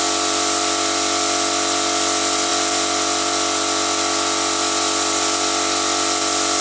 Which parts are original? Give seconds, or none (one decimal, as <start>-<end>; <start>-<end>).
0.0-6.6